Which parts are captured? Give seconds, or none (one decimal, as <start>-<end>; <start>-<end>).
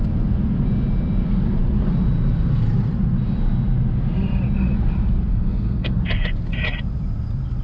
0.0-5.3; 6.0-7.6